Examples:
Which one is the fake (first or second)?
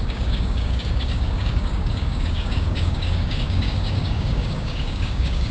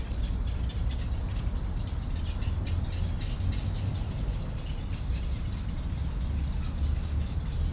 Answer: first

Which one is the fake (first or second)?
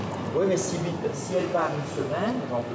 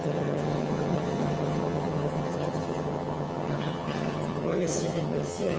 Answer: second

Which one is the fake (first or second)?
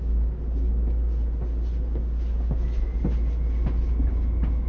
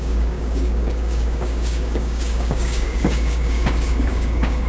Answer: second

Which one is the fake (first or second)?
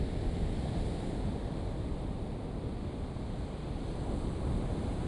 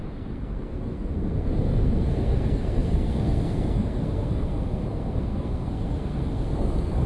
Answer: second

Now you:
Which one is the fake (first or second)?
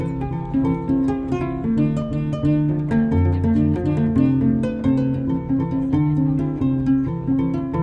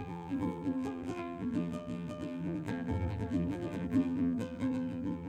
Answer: second